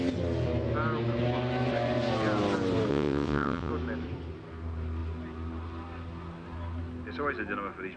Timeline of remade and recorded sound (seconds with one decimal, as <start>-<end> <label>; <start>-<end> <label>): 0.0-2.9 recorded; 2.9-3.7 remade; 3.7-8.0 recorded